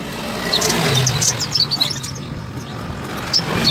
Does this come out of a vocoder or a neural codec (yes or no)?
no